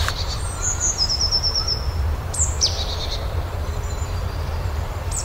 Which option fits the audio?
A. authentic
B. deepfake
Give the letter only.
B